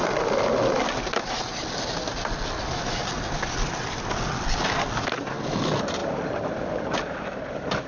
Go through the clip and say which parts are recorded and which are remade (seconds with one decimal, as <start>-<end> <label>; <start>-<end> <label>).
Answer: 0.0-7.9 recorded